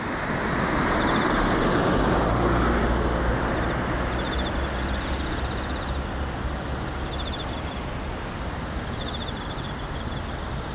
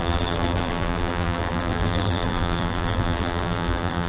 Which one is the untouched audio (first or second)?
first